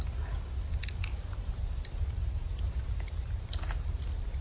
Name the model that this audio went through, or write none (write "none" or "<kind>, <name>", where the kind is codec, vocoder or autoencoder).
none